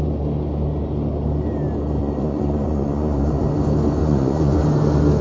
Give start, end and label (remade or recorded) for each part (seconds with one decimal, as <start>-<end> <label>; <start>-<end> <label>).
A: 0.0-2.0 recorded; 2.0-3.4 remade; 3.4-4.0 recorded; 4.0-4.6 remade; 4.6-5.2 recorded